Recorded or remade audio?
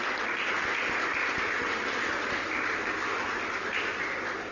recorded